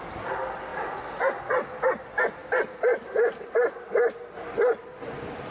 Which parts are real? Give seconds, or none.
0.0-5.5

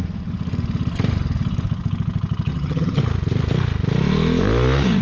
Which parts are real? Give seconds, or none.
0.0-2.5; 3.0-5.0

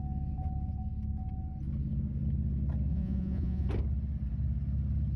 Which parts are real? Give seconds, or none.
0.0-2.9; 3.7-5.2